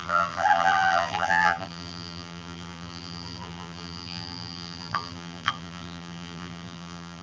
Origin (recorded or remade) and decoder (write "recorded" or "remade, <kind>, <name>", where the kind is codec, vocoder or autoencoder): remade, vocoder, BigVGAN v2